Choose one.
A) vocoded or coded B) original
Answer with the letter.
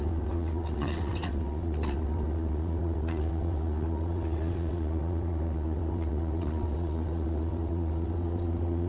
A